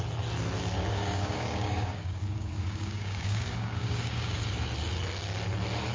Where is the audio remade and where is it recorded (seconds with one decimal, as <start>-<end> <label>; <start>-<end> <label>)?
0.0-0.9 recorded; 0.9-4.4 remade; 4.4-5.9 recorded